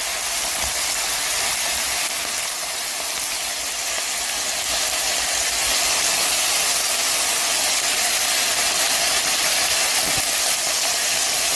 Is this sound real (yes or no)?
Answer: yes